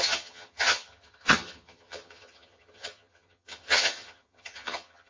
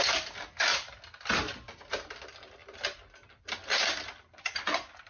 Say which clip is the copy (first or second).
first